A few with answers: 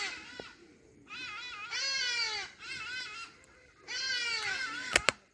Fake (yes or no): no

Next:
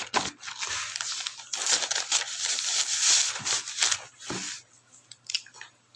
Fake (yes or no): no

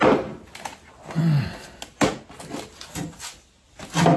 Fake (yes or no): no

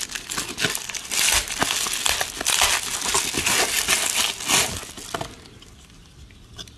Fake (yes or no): no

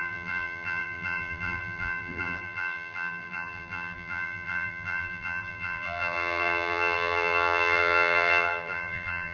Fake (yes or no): yes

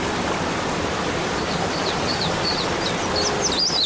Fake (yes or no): no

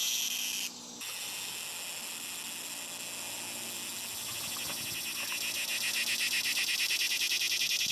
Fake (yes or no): no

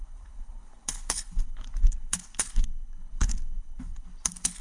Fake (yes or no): yes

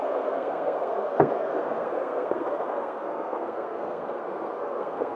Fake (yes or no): yes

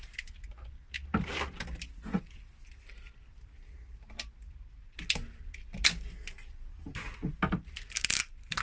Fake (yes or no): no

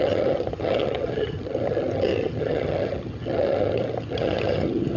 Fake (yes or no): yes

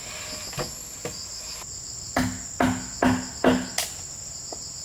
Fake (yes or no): no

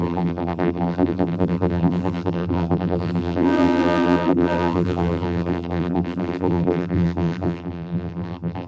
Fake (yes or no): yes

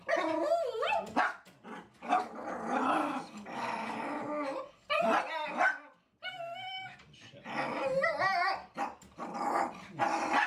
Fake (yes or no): no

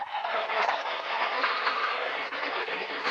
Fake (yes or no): yes